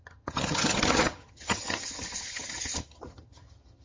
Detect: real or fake fake